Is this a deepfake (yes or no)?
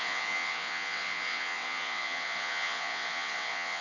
yes